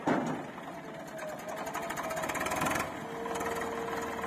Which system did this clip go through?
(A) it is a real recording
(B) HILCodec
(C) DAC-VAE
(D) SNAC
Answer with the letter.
A